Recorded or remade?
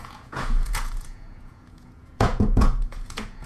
remade